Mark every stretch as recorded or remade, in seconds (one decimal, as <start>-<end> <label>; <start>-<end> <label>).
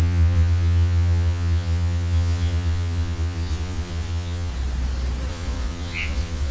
0.0-4.5 remade; 4.5-5.3 recorded; 5.3-6.5 remade